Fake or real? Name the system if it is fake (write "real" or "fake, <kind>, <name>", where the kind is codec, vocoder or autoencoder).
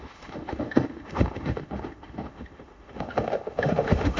fake, autoencoder, DAC-VAE